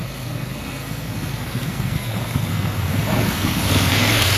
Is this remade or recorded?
remade